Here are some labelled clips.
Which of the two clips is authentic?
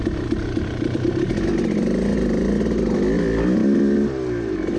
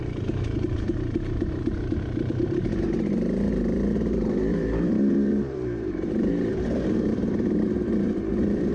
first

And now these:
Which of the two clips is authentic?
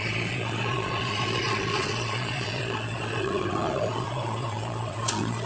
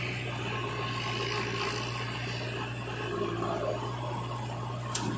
second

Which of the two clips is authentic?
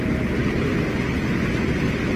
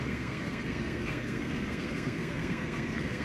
first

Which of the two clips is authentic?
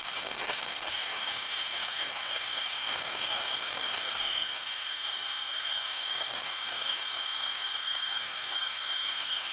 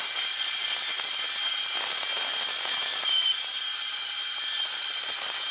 second